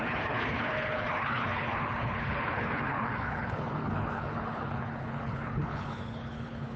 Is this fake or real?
fake